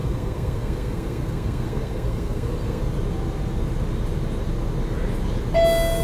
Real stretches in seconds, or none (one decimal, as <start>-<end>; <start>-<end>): 2.8-6.0